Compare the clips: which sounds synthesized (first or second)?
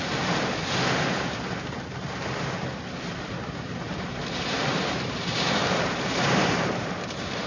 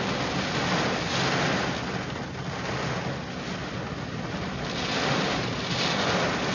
first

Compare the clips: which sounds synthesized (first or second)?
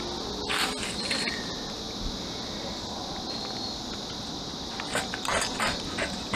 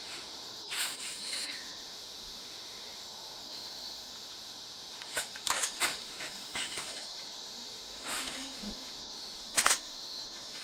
second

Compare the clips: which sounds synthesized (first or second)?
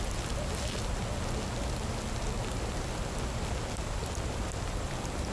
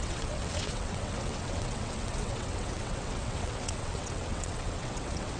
second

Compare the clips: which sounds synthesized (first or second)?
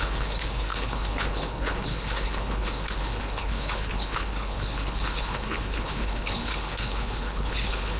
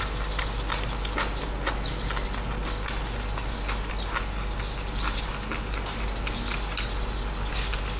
first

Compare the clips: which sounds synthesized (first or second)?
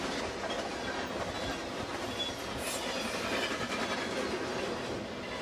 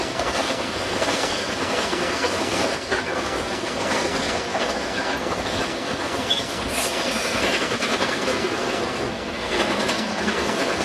second